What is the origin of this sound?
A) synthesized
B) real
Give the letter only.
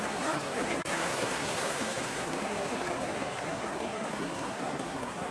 A